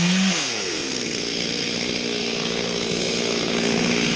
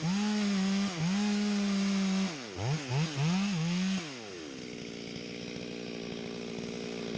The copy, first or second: first